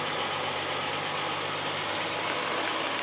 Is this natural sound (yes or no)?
yes